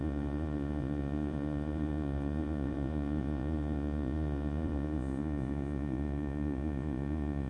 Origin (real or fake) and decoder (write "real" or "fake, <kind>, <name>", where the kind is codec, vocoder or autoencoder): fake, vocoder, Vocos